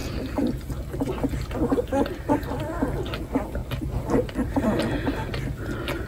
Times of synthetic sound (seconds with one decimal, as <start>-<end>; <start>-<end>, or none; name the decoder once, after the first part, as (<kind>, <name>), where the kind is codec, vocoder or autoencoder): none